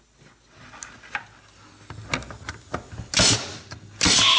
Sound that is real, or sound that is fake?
real